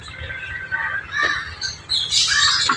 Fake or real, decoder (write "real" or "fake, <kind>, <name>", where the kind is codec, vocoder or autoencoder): real